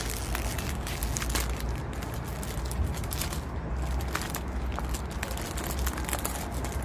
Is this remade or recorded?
recorded